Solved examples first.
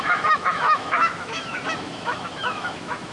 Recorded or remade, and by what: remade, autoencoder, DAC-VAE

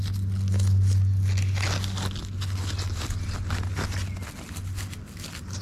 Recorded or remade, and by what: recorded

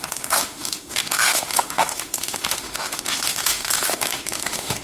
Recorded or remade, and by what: remade, autoencoder, DAC-VAE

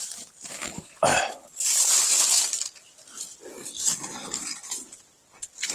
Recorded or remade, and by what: recorded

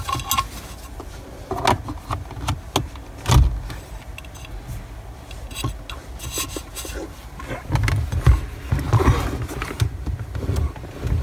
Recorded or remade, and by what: recorded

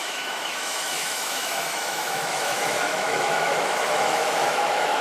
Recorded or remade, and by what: remade, autoencoder, DAC-VAE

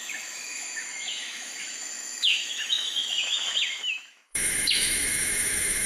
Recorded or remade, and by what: remade, autoencoder, DAC-VAE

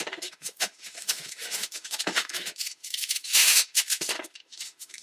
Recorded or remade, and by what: remade, autoencoder, DAC-VAE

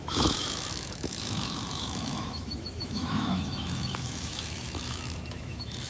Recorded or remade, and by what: remade, autoencoder, DAC-VAE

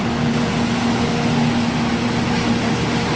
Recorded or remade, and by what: recorded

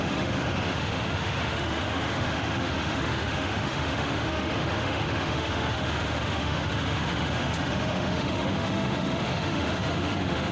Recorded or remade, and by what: remade, autoencoder, DAC-VAE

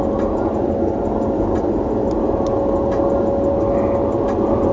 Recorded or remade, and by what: recorded